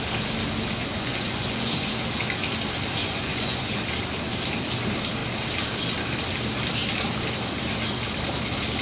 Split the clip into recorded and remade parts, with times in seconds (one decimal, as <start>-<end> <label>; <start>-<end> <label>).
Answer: 0.0-0.8 recorded; 0.8-1.9 remade; 1.9-3.0 recorded; 3.0-3.8 remade; 3.8-8.8 recorded